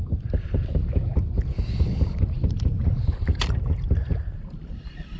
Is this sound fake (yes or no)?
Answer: no